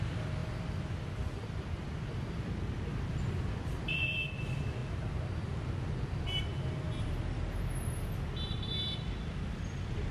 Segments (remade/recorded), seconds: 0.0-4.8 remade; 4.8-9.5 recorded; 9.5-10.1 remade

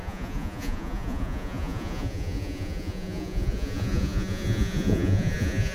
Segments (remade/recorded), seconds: 0.0-5.7 remade

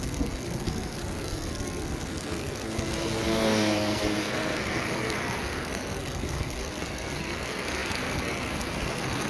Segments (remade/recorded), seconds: 0.0-9.3 remade

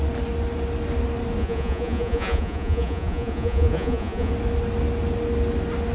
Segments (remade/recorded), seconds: 0.0-1.4 recorded; 1.4-4.3 remade; 4.3-5.9 recorded

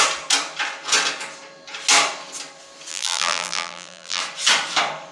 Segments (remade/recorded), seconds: 0.0-2.9 recorded; 2.9-4.2 remade; 4.2-5.1 recorded